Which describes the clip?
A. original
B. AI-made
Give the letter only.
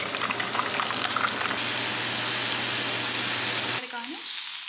A